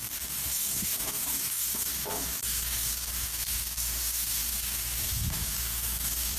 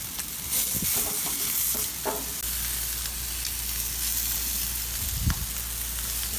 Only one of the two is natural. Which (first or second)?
second